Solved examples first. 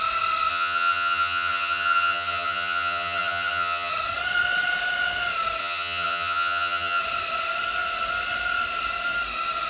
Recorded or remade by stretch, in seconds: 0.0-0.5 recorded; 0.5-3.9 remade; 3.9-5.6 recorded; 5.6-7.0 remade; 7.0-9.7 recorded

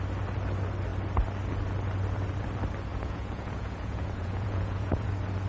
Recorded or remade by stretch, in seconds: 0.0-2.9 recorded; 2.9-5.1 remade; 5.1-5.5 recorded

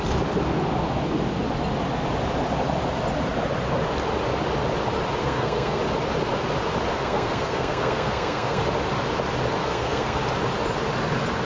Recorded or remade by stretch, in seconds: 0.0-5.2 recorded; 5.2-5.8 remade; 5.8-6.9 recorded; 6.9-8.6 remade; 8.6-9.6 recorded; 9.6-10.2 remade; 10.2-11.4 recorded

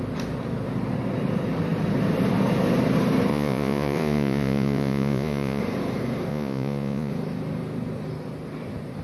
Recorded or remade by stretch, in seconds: 0.0-3.3 recorded; 3.3-5.6 remade; 5.6-6.3 recorded; 6.3-7.1 remade; 7.1-9.0 recorded

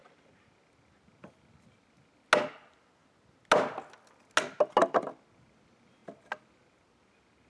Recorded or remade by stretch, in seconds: 0.0-7.5 recorded

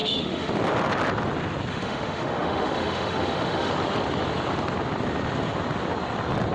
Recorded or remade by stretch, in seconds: 0.0-0.5 remade; 0.5-1.7 recorded; 1.7-3.7 remade; 3.7-6.5 recorded

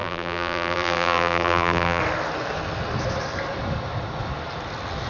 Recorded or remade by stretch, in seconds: 0.0-2.0 remade; 2.0-5.1 recorded